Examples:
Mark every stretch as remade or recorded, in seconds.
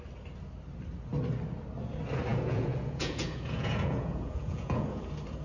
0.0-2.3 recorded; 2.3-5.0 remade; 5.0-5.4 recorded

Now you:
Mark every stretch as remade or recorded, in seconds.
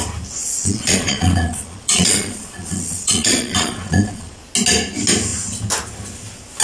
0.0-0.4 recorded; 0.4-4.4 remade; 4.4-6.6 recorded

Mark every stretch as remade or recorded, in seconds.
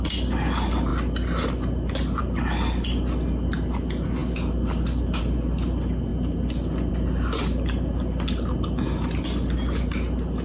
0.0-10.4 recorded